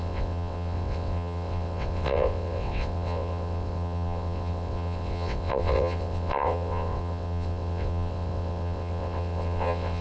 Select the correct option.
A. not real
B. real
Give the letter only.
A